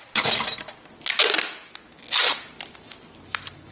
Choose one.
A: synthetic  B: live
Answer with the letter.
B